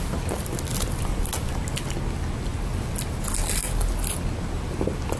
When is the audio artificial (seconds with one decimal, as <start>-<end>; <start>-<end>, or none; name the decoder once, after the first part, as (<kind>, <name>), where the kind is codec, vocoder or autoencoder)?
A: none